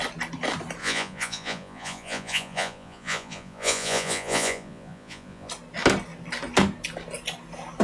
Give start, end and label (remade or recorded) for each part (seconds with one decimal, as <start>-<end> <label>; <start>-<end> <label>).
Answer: 0.0-0.8 recorded; 0.8-5.5 remade; 5.5-7.8 recorded

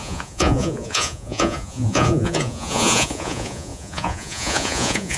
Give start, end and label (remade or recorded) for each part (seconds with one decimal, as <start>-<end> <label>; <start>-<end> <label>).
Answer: 0.0-5.2 remade

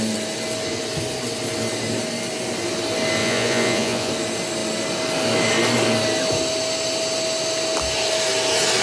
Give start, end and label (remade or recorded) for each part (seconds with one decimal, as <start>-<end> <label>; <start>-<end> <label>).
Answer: 0.0-3.2 recorded; 3.2-4.1 remade; 4.1-8.8 recorded

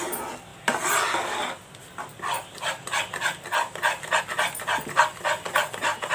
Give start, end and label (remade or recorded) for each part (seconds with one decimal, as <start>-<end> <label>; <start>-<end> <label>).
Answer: 0.0-6.1 recorded

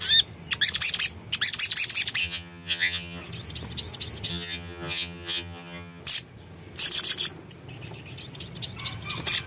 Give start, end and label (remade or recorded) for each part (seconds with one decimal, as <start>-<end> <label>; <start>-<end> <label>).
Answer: 0.0-2.2 recorded; 2.2-3.2 remade; 3.2-4.3 recorded; 4.3-6.0 remade; 6.0-9.5 recorded

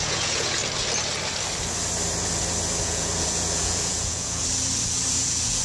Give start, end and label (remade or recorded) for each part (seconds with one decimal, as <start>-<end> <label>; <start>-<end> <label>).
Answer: 0.0-0.6 remade; 0.6-2.8 recorded; 2.8-4.4 remade; 4.4-5.1 recorded; 5.1-5.6 remade